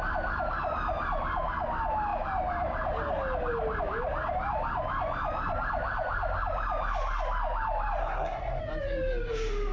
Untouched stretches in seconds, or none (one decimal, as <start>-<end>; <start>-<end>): 0.0-8.0; 8.6-9.7

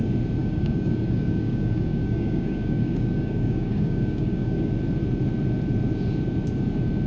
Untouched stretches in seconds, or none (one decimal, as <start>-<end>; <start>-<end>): 0.0-0.4; 4.7-7.1

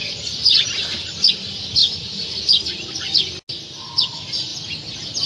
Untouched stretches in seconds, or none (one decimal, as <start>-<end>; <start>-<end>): 0.0-5.3